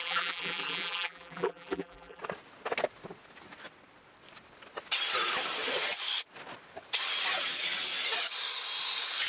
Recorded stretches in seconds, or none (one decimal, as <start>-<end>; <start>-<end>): 2.2-9.3